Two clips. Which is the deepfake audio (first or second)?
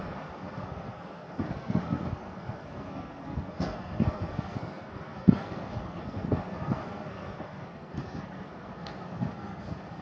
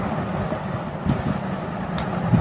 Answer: first